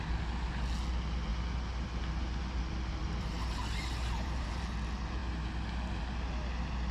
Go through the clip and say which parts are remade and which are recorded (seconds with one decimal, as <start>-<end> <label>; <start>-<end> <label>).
0.0-3.0 recorded; 3.0-4.6 remade; 4.6-6.9 recorded